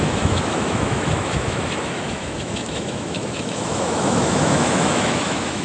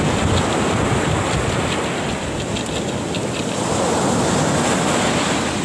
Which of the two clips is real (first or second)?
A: second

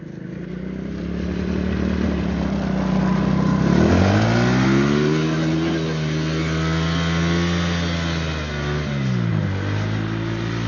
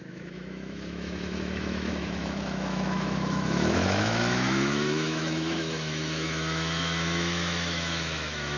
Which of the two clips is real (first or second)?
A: first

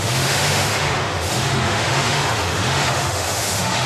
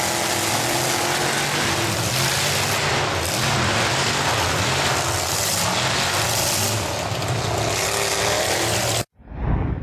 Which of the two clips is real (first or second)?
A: second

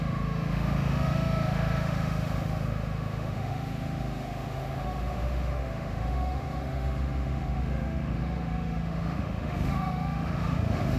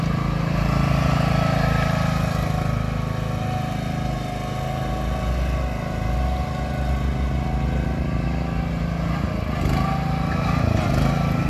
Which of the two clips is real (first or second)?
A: second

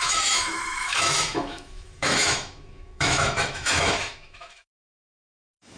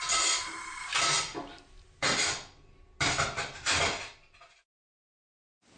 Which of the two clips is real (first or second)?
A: second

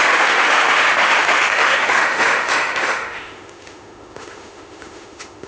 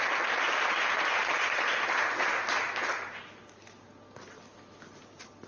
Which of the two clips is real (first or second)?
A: second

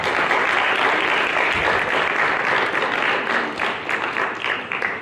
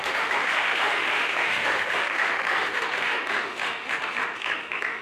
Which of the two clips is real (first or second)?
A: first